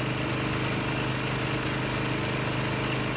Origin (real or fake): real